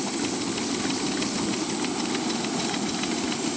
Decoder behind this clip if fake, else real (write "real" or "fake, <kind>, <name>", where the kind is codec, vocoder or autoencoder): real